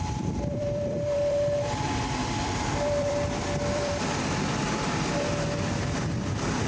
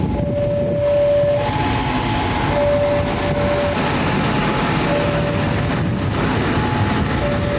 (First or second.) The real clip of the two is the second